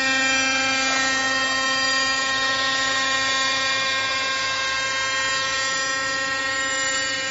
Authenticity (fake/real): real